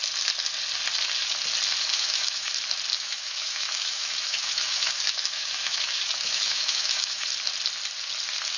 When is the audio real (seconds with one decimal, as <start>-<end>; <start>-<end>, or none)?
0.0-1.9; 2.5-2.9; 7.3-8.6